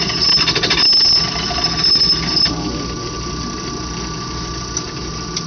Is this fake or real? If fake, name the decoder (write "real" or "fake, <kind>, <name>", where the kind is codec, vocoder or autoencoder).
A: real